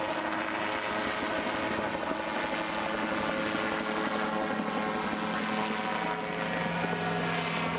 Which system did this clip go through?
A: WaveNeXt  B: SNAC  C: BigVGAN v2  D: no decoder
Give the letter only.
D